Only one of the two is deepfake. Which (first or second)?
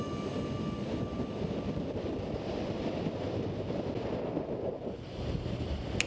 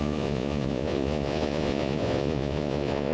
second